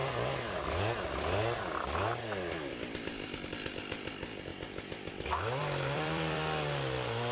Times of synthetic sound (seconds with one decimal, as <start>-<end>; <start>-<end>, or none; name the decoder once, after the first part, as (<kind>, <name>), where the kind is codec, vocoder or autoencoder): 5.6-7.3 (vocoder, BigVGAN v2)